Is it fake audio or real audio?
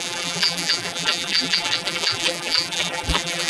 fake